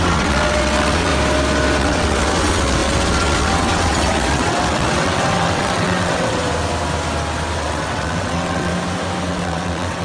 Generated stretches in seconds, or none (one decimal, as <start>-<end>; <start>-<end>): 0.0-1.1; 1.8-6.4; 7.6-8.7; 9.3-10.0